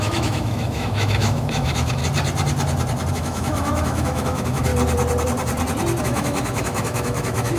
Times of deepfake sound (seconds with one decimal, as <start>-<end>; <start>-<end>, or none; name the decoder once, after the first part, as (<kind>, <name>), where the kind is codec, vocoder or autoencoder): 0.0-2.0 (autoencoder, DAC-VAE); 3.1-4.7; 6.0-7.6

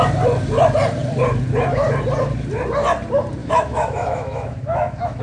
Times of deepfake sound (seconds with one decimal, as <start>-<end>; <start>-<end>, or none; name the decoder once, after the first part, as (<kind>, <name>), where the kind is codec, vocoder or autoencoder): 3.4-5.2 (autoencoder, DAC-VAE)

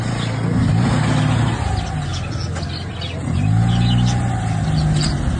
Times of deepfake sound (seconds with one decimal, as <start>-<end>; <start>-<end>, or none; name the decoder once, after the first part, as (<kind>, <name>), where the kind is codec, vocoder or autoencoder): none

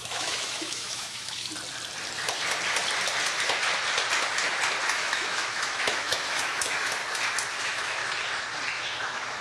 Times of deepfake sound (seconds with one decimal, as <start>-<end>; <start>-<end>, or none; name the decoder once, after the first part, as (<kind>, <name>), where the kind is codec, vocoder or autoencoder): 0.0-1.5 (autoencoder, DAC-VAE); 4.9-7.0; 7.6-8.0; 8.7-9.4